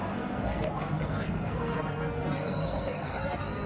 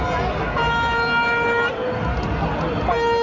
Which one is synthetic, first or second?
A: first